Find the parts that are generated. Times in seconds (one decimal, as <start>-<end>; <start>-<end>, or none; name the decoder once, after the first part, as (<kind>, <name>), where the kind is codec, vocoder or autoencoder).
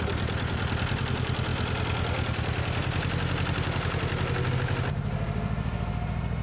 none